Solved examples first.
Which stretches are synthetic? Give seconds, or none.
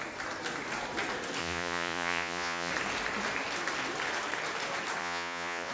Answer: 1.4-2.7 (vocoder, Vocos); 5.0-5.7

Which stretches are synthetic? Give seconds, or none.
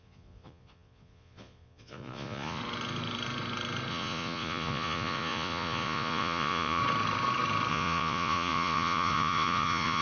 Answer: 0.0-2.6 (vocoder, Vocos); 3.9-6.8; 7.7-10.0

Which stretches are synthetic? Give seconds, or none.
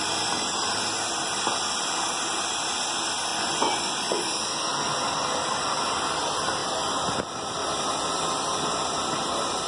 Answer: 3.3-3.9 (vocoder, Vocos)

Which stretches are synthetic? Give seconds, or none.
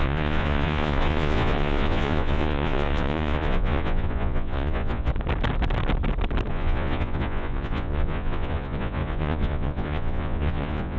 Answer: 0.0-5.1 (vocoder, Vocos); 6.5-11.0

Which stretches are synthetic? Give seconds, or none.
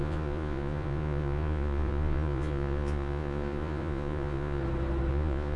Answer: 0.0-4.6 (vocoder, Vocos); 5.1-5.6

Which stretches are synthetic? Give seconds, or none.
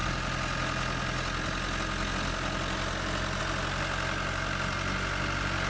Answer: none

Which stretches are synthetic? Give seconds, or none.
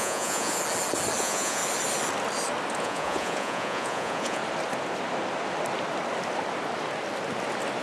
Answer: 0.0-0.6 (vocoder, Vocos); 1.2-1.6; 2.8-4.4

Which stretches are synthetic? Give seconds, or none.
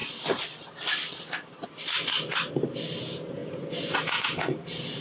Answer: 3.0-5.0 (vocoder, Vocos)